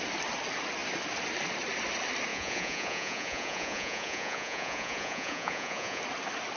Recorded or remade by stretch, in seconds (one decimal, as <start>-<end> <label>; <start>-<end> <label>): 0.0-2.3 recorded; 2.3-6.0 remade; 6.0-6.6 recorded